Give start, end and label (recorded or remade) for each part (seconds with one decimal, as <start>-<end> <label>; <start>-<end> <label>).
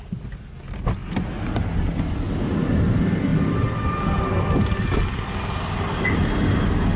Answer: 0.0-7.0 recorded